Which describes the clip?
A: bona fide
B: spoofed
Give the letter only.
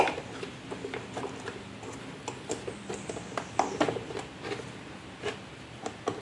A